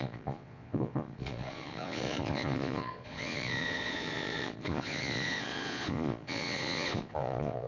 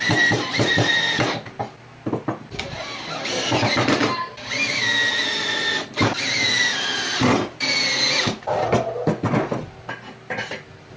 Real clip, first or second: second